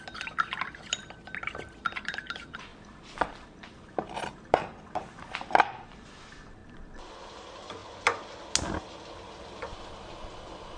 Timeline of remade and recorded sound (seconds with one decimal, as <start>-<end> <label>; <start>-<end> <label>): 0.0-2.7 remade; 2.7-3.6 recorded; 3.6-6.6 remade; 6.6-7.2 recorded; 7.2-7.8 remade; 7.8-9.9 recorded; 9.9-10.8 remade